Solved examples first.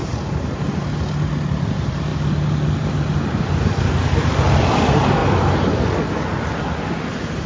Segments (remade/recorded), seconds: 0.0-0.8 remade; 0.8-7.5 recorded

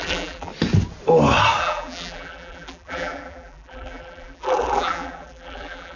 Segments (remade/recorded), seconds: 0.0-0.5 remade; 0.5-1.6 recorded; 1.6-6.0 remade

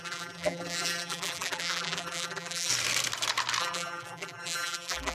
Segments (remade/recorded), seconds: 0.0-2.7 remade; 2.7-3.6 recorded; 3.6-5.1 remade

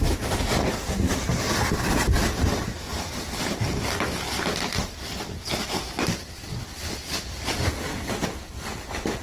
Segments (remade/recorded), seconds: 0.0-9.2 recorded

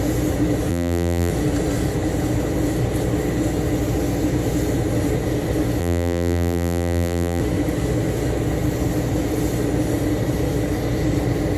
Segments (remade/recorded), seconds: 0.0-0.7 recorded; 0.7-1.3 remade; 1.3-5.8 recorded; 5.8-7.4 remade; 7.4-11.6 recorded

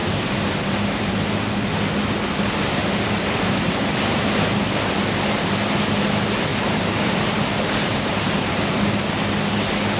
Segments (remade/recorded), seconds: 0.0-1.1 remade; 1.1-2.8 recorded; 2.8-3.5 remade; 3.5-6.5 recorded; 6.5-9.0 remade; 9.0-10.0 recorded

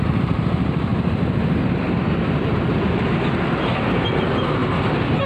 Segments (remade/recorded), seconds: 0.0-0.9 remade; 0.9-3.3 recorded; 3.3-4.6 remade; 4.6-5.3 recorded